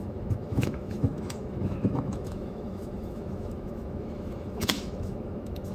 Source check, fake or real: fake